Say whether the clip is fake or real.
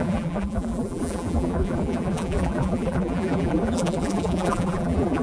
fake